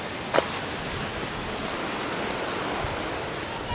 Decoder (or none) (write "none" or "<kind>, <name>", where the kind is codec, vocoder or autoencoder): none